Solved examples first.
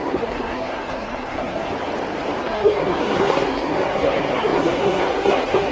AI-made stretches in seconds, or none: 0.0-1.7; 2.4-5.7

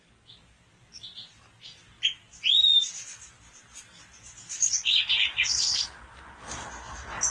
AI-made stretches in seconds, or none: none